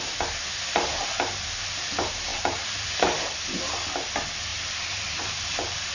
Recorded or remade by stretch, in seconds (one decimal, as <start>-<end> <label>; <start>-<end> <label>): 0.0-2.3 recorded; 2.3-3.6 remade; 3.6-4.5 recorded; 4.5-5.9 remade